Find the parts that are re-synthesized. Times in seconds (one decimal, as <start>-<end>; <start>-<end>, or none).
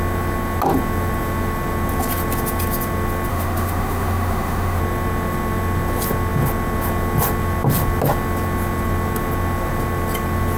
3.3-4.8